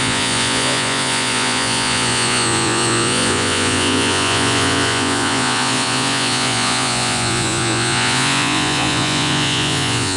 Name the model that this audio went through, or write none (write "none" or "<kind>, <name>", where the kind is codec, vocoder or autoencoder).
vocoder, Vocos